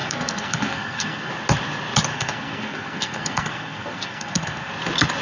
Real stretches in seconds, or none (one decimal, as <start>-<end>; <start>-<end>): 1.3-2.1; 4.7-5.2